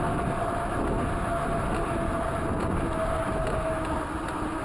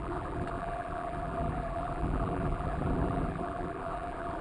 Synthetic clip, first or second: second